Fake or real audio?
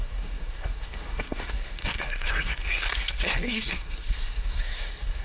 fake